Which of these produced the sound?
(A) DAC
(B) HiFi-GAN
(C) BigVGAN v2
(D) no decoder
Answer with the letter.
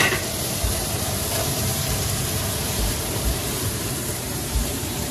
C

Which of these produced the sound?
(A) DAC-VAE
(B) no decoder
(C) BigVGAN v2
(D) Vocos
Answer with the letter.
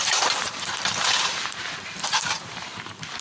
C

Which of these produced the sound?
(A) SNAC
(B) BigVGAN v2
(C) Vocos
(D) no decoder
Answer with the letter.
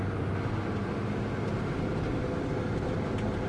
D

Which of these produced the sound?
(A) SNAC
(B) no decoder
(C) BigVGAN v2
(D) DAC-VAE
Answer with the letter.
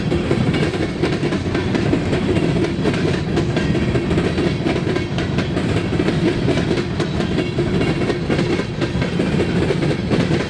C